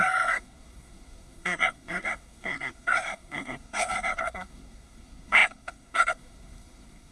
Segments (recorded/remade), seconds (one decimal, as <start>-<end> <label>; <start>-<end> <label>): 0.0-7.1 remade